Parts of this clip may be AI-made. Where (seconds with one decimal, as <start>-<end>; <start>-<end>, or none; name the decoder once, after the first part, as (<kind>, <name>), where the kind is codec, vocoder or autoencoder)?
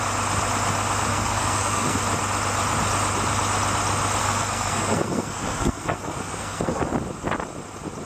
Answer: 1.1-2.0 (codec, SNAC); 4.2-6.8